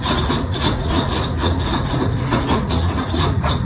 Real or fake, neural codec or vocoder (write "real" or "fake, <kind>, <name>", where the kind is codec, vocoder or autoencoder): fake, vocoder, Vocos